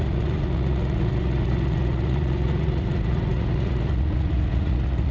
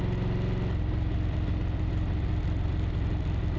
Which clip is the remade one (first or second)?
first